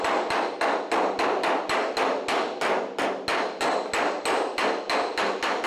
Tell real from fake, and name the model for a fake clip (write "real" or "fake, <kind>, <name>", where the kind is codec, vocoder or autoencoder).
real